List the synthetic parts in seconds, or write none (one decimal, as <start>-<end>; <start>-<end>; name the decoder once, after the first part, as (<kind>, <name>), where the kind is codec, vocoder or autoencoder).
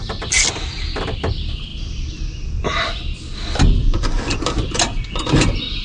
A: 0.0-5.8 (vocoder, BigVGAN v2)